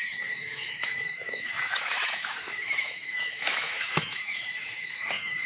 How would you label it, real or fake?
fake